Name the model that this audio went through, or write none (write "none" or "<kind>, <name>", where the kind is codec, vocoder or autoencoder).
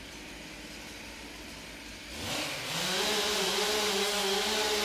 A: none